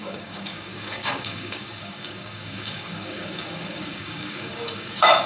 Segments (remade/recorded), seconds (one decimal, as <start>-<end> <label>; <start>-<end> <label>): 0.0-5.3 remade